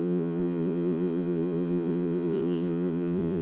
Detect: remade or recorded remade